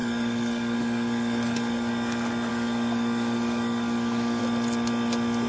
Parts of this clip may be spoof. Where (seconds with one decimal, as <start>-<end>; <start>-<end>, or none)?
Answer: 0.0-1.9; 2.5-4.4